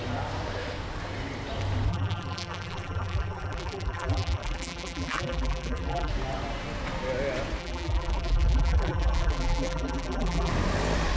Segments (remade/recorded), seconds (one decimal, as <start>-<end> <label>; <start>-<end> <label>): 0.0-1.9 recorded; 1.9-6.1 remade; 6.1-7.6 recorded; 7.6-10.5 remade; 10.5-11.2 recorded